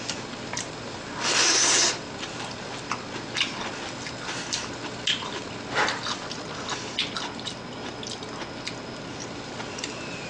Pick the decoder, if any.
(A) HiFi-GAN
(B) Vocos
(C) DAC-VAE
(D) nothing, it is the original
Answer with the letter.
D